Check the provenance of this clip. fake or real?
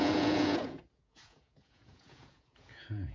fake